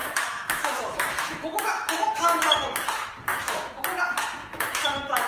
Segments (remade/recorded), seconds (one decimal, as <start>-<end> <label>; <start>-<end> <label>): 0.0-2.7 remade; 2.7-3.3 recorded; 3.3-3.8 remade; 3.8-4.4 recorded; 4.4-5.3 remade